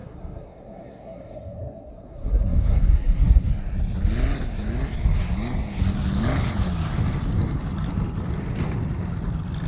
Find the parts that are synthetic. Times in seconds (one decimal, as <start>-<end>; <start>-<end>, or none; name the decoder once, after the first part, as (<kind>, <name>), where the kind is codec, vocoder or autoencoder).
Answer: 0.0-3.5 (codec, SNAC)